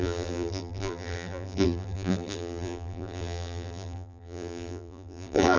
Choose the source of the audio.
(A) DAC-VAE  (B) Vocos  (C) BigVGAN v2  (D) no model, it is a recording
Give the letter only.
C